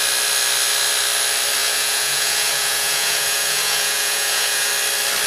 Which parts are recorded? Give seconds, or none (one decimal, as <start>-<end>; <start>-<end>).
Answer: 0.0-1.6; 4.7-5.3